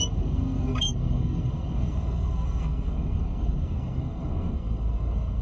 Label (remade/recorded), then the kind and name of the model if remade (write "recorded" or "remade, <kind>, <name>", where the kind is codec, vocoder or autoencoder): remade, codec, SNAC